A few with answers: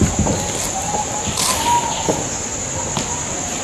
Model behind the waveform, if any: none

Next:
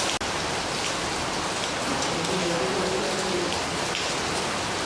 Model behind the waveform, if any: none